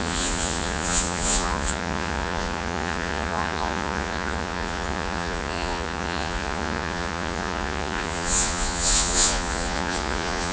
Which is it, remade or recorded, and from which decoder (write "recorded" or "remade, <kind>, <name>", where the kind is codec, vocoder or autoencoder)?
remade, vocoder, Vocos